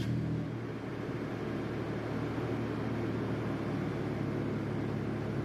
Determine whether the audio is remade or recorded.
recorded